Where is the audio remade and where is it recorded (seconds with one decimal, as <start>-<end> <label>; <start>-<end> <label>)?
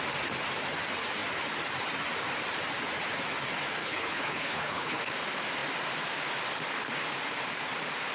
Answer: 0.0-3.8 recorded; 3.8-5.1 remade; 5.1-8.1 recorded